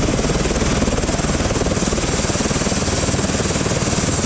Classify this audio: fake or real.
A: real